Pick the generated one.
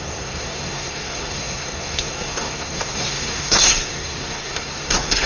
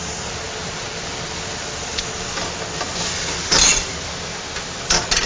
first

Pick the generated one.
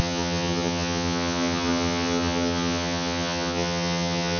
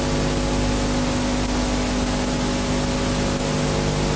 first